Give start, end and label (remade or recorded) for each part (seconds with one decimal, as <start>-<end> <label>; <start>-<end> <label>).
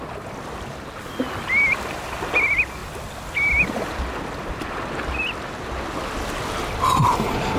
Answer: 0.0-7.6 recorded